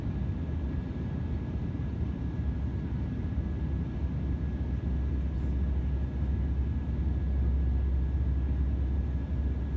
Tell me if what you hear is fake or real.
real